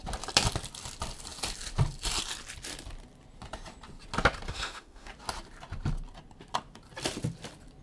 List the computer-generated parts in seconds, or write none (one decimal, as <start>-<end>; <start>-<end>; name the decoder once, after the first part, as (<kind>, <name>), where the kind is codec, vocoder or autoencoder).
4.5-5.1 (autoencoder, DAC-VAE)